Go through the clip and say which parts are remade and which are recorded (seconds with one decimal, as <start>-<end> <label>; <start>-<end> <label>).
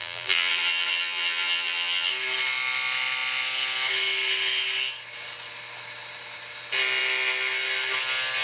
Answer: 0.0-2.1 remade; 2.1-8.4 recorded